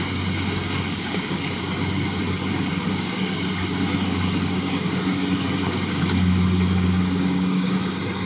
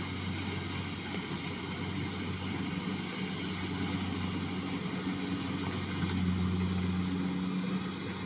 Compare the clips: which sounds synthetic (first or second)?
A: first